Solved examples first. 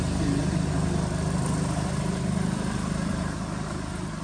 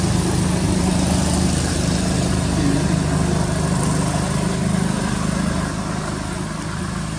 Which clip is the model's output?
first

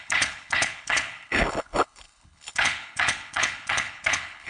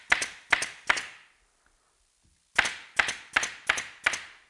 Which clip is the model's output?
first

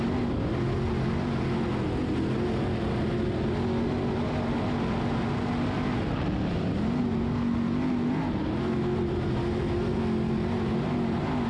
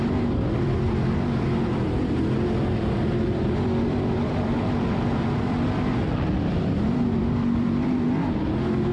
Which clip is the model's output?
second